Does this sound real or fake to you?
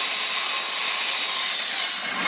real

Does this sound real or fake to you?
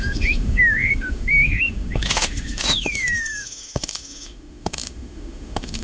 fake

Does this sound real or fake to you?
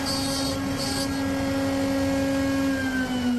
real